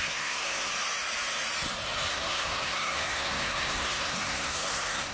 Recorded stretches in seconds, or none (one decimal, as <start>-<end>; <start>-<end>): 0.7-2.1